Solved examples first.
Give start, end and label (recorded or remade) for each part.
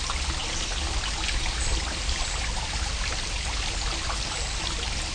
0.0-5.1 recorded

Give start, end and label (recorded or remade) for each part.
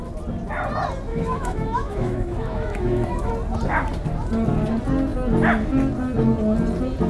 0.0-1.1 recorded; 1.1-3.3 remade; 3.3-7.1 recorded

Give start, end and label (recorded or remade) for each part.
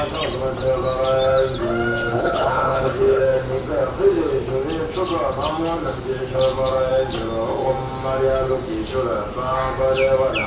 0.0-2.1 recorded; 2.1-3.2 remade; 3.2-10.5 recorded